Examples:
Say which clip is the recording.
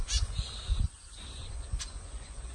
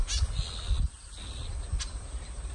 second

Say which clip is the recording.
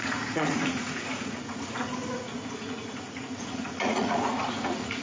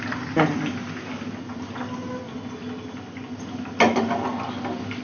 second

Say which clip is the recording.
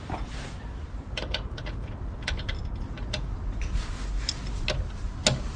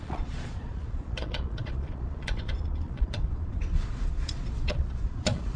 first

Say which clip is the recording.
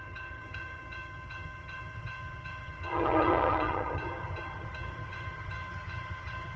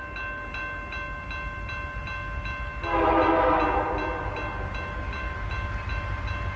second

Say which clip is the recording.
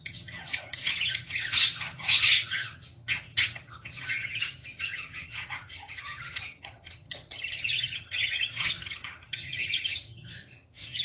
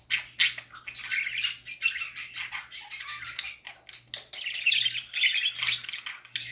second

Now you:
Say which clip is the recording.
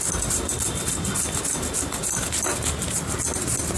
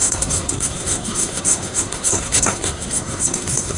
first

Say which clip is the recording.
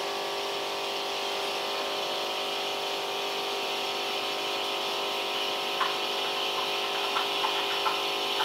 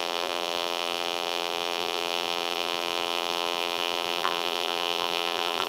first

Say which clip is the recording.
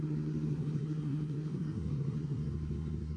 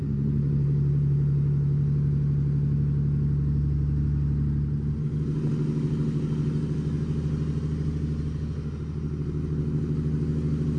second